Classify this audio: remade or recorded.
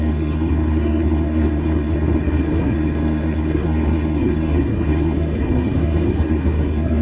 remade